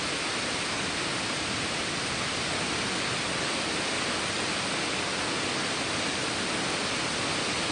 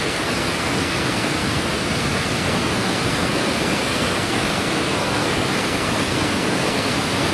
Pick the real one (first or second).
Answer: first